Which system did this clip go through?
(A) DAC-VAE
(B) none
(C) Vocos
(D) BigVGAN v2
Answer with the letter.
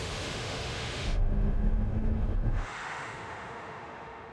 A